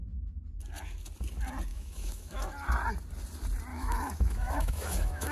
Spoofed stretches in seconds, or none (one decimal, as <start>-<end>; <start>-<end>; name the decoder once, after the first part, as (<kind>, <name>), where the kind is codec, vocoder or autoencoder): 1.7-2.4 (autoencoder, DAC-VAE); 3.7-5.3